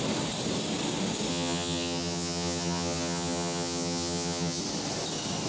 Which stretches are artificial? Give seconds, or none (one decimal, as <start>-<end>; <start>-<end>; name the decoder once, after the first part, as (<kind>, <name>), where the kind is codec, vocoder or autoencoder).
1.3-4.6 (vocoder, HiFi-GAN)